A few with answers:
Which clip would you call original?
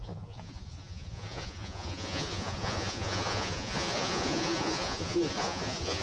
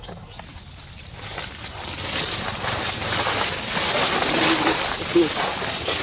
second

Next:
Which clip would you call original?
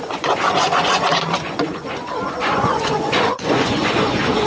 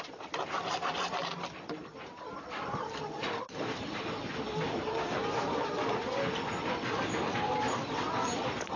second